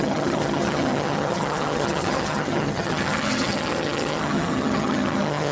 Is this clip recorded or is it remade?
remade